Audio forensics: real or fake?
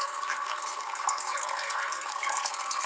fake